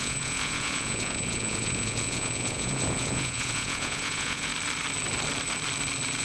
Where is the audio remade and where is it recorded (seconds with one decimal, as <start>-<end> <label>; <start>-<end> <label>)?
0.0-4.5 remade; 4.5-6.2 recorded